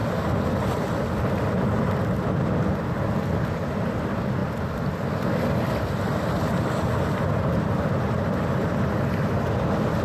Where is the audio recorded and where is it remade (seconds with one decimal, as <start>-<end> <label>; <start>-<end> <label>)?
0.0-10.0 recorded